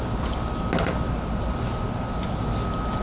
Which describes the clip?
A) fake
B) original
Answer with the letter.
B